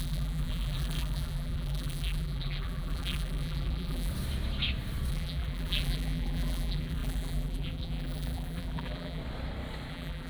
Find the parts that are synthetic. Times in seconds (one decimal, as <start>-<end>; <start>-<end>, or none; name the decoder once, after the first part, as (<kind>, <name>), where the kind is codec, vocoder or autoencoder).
0.0-4.1 (vocoder, BigVGAN v2); 5.1-9.2; 9.9-10.3